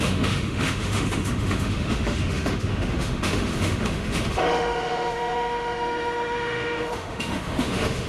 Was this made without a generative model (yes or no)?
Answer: no